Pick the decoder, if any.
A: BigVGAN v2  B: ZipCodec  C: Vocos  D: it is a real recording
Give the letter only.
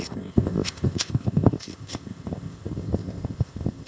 B